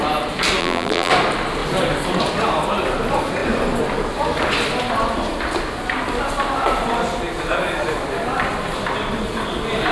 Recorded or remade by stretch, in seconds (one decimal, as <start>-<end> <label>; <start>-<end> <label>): 0.0-0.6 recorded; 0.6-1.1 remade; 1.1-9.9 recorded